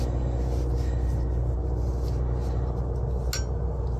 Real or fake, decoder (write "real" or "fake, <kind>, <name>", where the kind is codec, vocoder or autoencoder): real